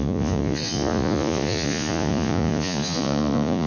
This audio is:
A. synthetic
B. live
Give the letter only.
A